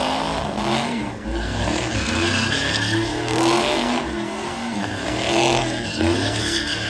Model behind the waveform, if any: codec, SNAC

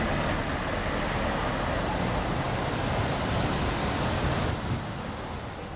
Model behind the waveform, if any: none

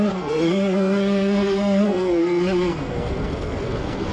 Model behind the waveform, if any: codec, SNAC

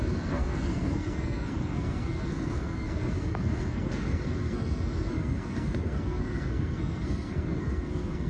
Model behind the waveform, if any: codec, SNAC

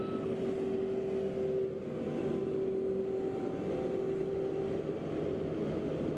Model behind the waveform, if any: none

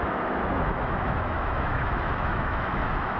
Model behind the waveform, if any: autoencoder, DAC-VAE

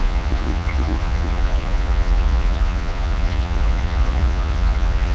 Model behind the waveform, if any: vocoder, Vocos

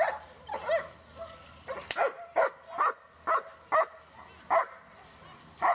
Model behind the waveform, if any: none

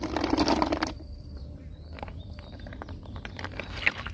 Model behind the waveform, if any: vocoder, BigVGAN v2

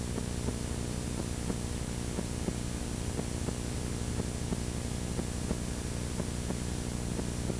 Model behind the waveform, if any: none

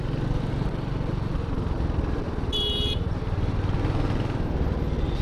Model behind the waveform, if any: none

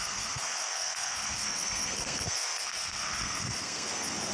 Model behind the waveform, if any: codec, SNAC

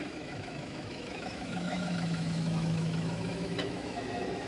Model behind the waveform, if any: autoencoder, DAC-VAE